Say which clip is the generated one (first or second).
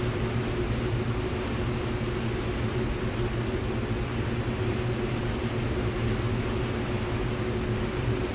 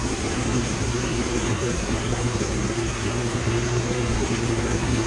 second